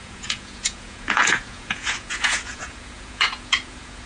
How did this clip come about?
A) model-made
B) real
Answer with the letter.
A